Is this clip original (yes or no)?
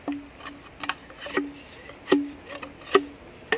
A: yes